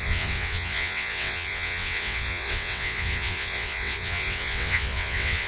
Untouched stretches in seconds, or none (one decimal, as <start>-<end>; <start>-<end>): none

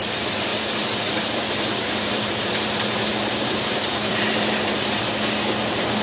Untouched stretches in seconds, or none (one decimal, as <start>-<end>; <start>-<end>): 0.0-0.5; 2.3-3.1; 5.0-6.0

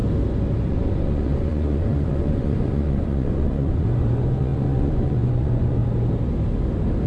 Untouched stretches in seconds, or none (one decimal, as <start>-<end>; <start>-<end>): 0.0-0.7; 5.8-7.1

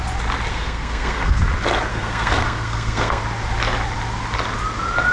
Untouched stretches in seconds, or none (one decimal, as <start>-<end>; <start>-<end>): 0.0-0.5; 1.4-1.9; 3.2-5.1

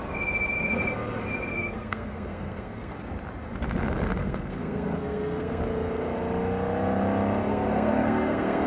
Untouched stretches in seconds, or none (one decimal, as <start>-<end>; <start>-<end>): 0.0-1.5; 2.9-4.2; 5.6-7.5

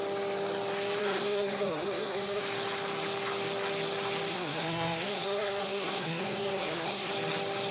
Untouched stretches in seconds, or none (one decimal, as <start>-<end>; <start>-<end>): 0.0-1.0; 2.4-4.3; 7.1-7.7